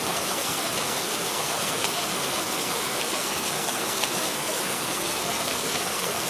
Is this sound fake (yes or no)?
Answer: yes